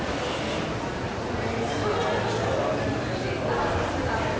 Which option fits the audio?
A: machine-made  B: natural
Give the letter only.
B